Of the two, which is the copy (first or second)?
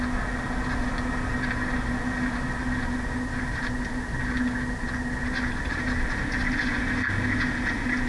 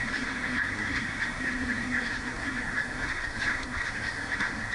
second